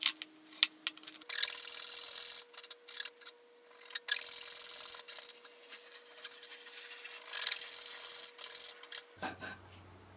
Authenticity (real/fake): real